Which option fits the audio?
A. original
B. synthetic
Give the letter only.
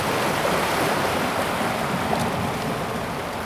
A